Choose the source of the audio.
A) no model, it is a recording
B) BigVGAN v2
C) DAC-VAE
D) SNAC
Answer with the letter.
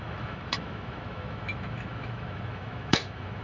C